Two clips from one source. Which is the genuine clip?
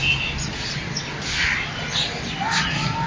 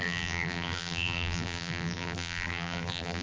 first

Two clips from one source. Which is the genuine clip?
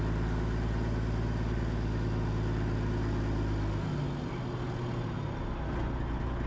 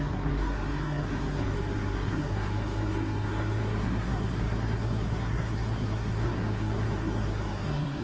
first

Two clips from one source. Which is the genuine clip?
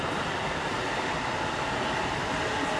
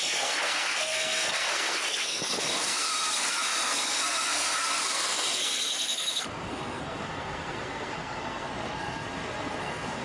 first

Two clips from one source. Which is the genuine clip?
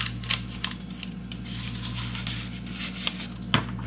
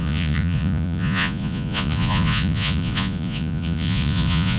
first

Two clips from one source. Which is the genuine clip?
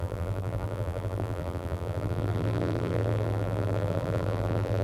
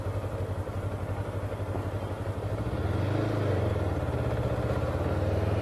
second